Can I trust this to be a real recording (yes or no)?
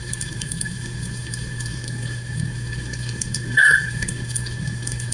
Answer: no